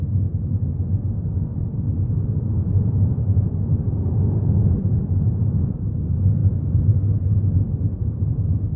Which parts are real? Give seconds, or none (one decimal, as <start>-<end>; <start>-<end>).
0.0-8.8